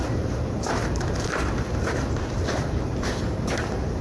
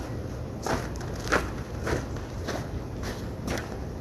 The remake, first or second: first